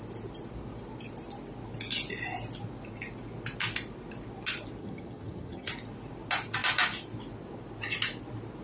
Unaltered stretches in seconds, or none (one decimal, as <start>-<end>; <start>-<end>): 0.0-4.8; 5.7-8.6